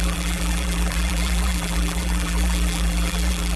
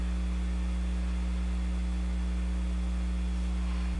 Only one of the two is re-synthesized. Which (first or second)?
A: first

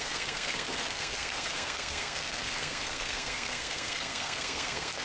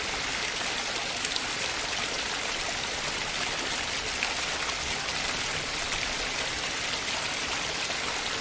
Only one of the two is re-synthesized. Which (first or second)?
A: first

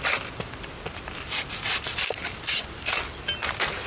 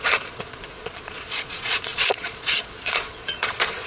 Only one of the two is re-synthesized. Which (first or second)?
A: second